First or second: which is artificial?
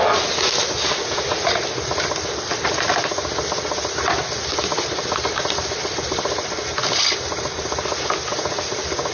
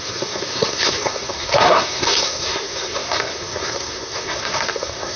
second